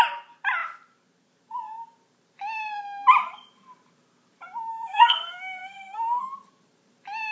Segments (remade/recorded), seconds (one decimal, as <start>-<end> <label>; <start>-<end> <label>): 0.0-4.7 recorded; 4.7-6.2 remade; 6.2-7.3 recorded